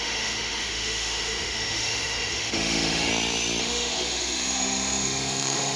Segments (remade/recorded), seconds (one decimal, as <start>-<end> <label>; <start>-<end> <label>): 0.0-3.1 remade; 3.1-3.6 recorded; 3.6-5.8 remade